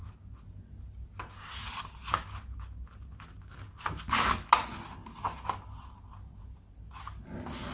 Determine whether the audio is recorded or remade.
recorded